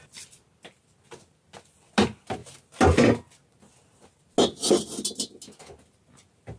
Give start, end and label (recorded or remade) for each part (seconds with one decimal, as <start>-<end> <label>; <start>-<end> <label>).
0.0-6.6 recorded